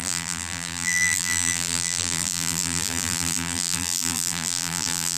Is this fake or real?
fake